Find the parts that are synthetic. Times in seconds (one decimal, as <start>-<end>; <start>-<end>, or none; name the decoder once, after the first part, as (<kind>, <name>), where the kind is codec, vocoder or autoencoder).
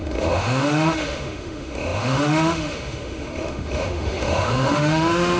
0.0-5.4 (autoencoder, DAC-VAE)